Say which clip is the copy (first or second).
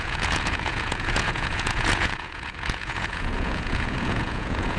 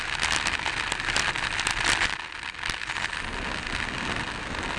first